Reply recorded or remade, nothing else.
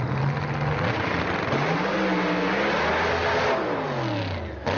recorded